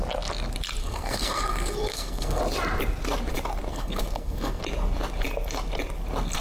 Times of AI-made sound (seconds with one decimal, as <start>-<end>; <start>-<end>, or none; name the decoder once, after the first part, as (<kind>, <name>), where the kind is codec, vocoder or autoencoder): 0.8-2.4 (codec, SNAC); 3.7-4.6

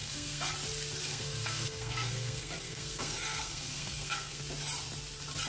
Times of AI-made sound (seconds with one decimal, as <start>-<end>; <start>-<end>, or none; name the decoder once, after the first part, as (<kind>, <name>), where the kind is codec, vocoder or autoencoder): 0.0-0.5 (codec, SNAC); 1.1-4.4